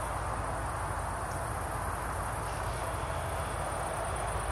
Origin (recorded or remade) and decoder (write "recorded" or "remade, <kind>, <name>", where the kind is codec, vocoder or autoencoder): recorded